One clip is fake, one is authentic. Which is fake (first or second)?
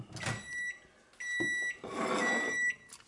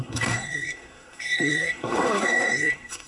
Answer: second